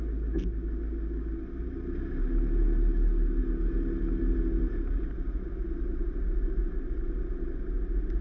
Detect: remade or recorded recorded